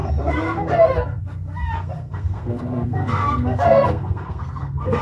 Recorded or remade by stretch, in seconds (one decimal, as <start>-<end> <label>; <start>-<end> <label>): 0.0-5.0 remade